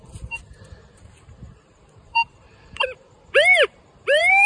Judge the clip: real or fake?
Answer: fake